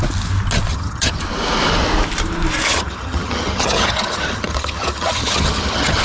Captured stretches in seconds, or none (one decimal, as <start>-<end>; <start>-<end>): 0.0-0.7; 1.2-2.7